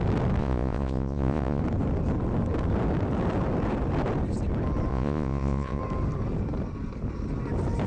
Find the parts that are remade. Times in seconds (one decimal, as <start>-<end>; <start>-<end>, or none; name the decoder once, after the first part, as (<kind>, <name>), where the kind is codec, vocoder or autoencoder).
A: 0.4-1.6 (vocoder, Vocos); 4.9-5.8